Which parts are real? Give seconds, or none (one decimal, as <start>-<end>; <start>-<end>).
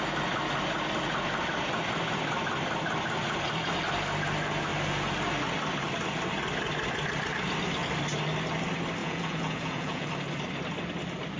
0.0-9.0; 10.1-11.4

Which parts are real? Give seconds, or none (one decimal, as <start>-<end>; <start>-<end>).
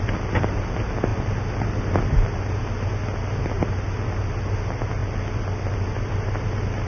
0.0-6.9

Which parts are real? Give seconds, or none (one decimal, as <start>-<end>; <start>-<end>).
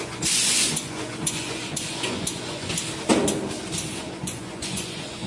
2.7-3.9